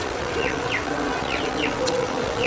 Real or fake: fake